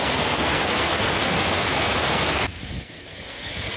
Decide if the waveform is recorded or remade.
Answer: remade